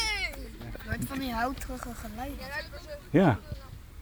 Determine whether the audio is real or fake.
real